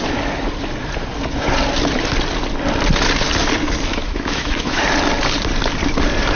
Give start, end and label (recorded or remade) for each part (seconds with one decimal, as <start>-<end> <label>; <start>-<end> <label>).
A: 0.0-3.9 recorded; 3.9-4.8 remade; 4.8-6.4 recorded